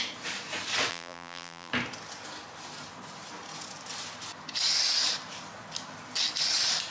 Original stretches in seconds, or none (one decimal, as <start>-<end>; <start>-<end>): 0.0-0.9; 1.7-6.9